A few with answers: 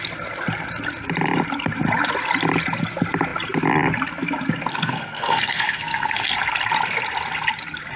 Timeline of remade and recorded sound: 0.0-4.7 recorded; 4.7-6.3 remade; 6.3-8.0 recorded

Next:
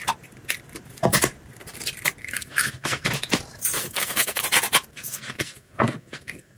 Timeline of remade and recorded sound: 0.0-2.2 recorded; 2.2-3.1 remade; 3.1-3.8 recorded; 3.8-4.4 remade; 4.4-4.9 recorded; 4.9-6.6 remade

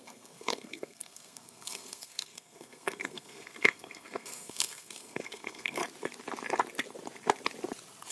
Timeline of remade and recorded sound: 0.0-5.8 remade; 5.8-8.1 recorded

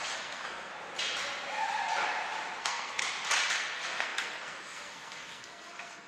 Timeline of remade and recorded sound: 0.0-0.7 remade; 0.7-2.6 recorded; 2.6-3.0 remade; 3.0-3.5 recorded; 3.5-6.1 remade

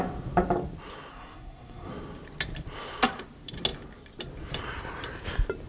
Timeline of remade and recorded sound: 0.0-1.1 recorded; 1.1-1.9 remade; 1.9-5.7 recorded

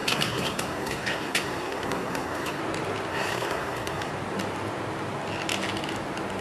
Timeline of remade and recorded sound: 0.0-2.6 remade; 2.6-3.1 recorded; 3.1-4.1 remade; 4.1-6.4 recorded

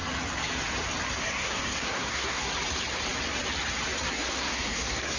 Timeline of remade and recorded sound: 0.0-1.2 recorded; 1.2-2.5 remade; 2.5-4.1 recorded; 4.1-5.2 remade

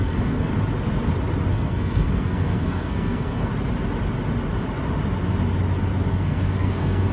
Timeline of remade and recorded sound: 0.0-0.5 remade; 0.5-1.5 recorded; 1.5-3.5 remade; 3.5-6.1 recorded; 6.1-7.1 remade